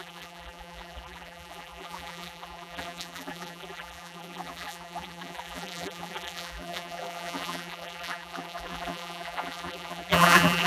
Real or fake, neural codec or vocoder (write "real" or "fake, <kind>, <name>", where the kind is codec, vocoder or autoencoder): fake, vocoder, BigVGAN v2